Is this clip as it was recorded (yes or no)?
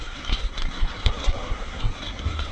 no